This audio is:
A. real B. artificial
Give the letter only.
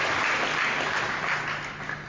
A